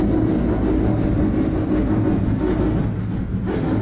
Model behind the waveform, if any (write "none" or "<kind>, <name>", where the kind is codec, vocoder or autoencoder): none